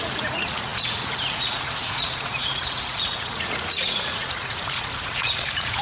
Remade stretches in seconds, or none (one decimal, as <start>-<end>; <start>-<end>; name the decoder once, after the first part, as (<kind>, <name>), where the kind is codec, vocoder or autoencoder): 0.0-5.8 (vocoder, Vocos)